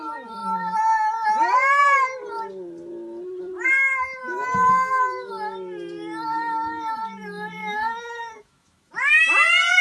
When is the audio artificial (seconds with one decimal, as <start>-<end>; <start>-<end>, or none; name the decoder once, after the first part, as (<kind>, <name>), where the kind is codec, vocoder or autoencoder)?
4.2-5.3 (autoencoder, DAC-VAE); 7.6-8.9